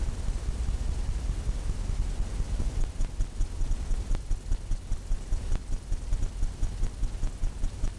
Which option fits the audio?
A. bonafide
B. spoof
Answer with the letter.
A